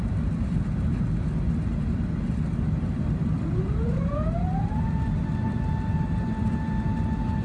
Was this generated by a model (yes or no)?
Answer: no